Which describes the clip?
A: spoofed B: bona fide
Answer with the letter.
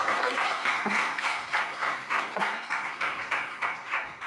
A